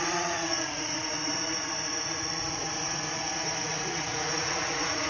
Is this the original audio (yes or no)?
no